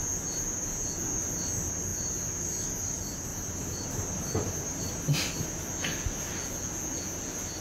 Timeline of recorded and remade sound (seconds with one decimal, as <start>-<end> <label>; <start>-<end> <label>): 0.0-3.3 recorded; 3.3-5.6 remade; 5.6-7.6 recorded